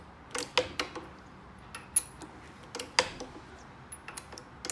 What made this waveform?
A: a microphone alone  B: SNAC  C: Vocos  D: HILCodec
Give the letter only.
A